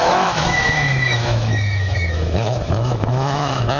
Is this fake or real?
fake